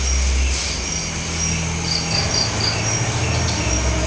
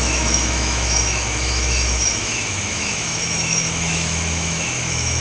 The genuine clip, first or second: first